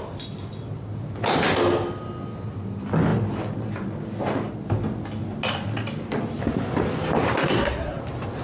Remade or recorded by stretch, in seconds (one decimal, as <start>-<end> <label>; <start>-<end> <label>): 0.0-7.4 recorded; 7.4-8.0 remade; 8.0-8.4 recorded